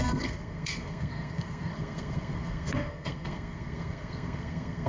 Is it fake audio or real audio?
fake